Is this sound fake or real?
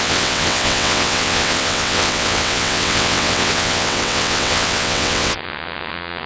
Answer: fake